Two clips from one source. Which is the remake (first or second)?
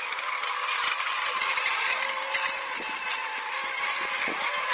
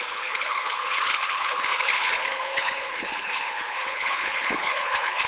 second